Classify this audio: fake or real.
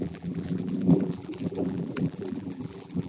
fake